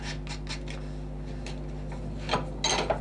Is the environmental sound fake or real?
real